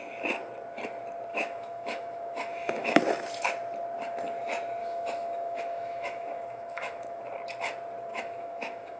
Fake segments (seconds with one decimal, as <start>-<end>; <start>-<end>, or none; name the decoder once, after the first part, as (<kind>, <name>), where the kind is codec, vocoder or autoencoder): 1.3-3.0 (autoencoder, DAC-VAE); 4.8-7.2; 8.1-9.0